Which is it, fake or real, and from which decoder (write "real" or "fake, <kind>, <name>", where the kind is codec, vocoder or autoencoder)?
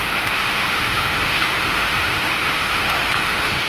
fake, autoencoder, DAC-VAE